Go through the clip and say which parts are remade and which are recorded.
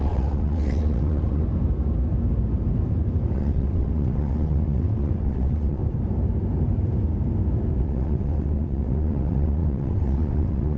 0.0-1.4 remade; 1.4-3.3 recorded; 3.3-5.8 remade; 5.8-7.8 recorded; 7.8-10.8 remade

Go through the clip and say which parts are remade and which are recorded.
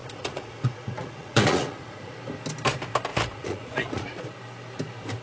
0.0-2.1 remade; 2.1-3.1 recorded; 3.1-4.3 remade; 4.3-5.2 recorded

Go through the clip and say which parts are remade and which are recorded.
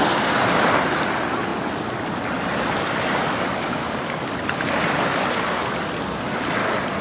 0.0-7.0 recorded